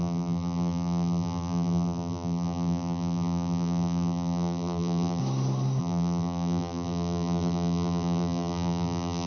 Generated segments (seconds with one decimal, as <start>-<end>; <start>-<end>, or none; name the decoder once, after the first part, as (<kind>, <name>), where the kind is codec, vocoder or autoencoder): 0.0-5.2 (vocoder, BigVGAN v2); 5.8-9.3